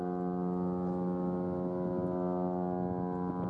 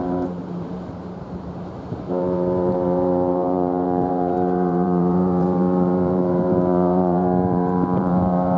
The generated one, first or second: second